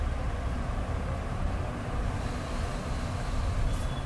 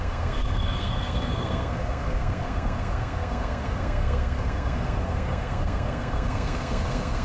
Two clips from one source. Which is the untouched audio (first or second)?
first